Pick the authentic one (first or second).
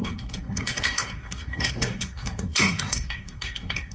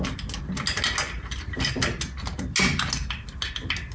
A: second